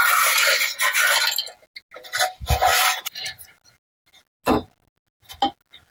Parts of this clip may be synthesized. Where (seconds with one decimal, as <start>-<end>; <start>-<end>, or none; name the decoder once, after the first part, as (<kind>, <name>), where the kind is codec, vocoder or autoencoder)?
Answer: none